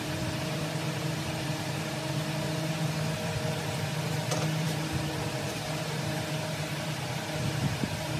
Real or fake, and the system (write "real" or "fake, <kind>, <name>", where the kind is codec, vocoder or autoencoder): fake, vocoder, BigVGAN v2